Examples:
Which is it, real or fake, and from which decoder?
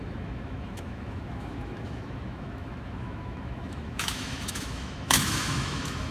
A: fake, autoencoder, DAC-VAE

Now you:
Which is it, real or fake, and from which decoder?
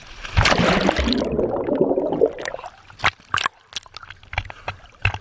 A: real